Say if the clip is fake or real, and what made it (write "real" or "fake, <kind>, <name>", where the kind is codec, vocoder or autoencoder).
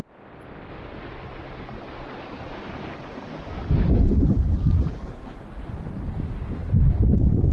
real